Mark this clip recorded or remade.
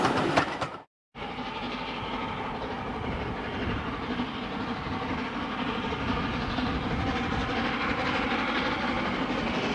remade